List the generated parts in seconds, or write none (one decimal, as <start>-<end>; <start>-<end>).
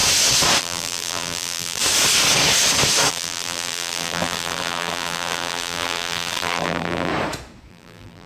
0.6-1.8; 3.1-7.1; 7.7-8.3